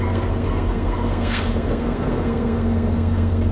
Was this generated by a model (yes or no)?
yes